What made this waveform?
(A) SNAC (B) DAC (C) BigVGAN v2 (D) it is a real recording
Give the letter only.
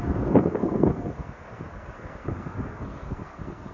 A